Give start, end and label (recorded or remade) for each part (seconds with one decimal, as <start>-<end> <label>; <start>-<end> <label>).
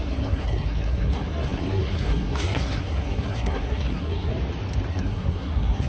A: 0.0-4.3 remade; 4.3-4.9 recorded; 4.9-5.9 remade